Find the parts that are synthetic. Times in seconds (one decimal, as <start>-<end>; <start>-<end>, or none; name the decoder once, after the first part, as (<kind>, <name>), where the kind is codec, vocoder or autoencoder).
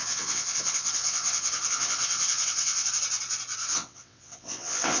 0.0-2.9 (vocoder, WaveNeXt); 3.6-5.0